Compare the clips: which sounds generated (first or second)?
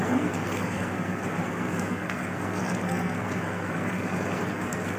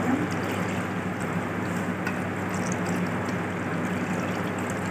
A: first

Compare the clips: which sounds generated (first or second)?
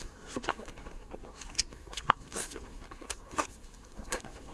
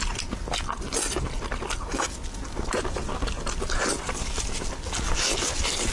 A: first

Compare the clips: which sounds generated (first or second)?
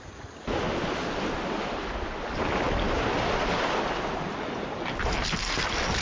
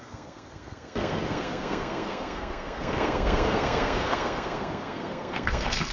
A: second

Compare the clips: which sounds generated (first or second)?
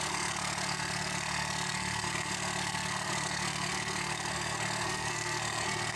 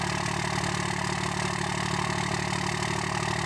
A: first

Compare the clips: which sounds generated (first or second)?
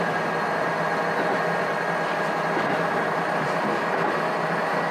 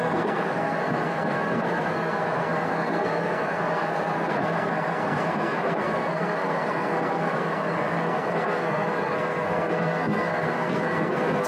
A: second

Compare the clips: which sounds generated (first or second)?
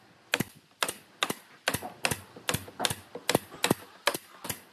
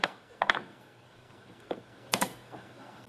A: second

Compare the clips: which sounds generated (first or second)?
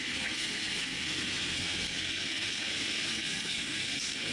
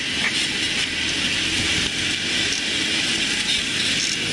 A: first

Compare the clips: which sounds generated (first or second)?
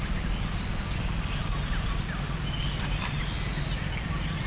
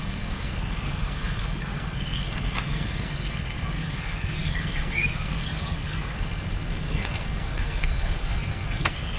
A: second